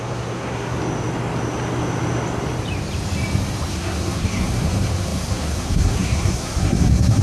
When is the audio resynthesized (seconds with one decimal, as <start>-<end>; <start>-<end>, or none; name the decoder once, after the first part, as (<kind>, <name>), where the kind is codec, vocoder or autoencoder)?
0.0-0.8 (codec, SNAC); 3.7-7.2

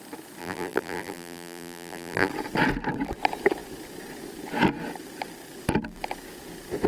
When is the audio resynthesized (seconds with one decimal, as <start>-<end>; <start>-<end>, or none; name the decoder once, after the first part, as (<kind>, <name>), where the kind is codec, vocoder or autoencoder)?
0.4-2.3 (vocoder, BigVGAN v2)

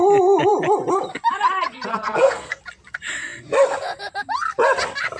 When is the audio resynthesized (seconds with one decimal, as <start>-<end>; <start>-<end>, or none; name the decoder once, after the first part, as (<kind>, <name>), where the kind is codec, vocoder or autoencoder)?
1.9-2.6 (codec, SNAC)

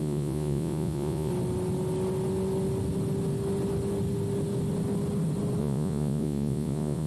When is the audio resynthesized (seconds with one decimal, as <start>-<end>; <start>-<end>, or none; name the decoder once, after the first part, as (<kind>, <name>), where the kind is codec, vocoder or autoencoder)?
0.0-1.3 (vocoder, Vocos); 5.6-7.1

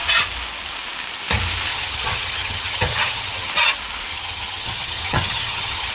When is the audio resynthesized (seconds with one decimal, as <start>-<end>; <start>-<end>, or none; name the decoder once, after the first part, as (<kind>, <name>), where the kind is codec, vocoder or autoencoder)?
1.7-3.5 (vocoder, HiFi-GAN); 4.1-5.9